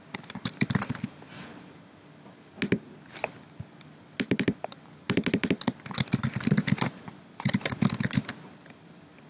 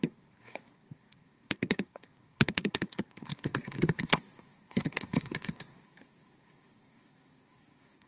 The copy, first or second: second